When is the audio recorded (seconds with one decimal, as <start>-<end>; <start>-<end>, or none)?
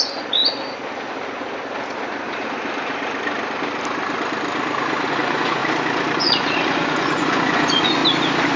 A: 0.4-5.1; 5.6-6.2; 8.0-8.6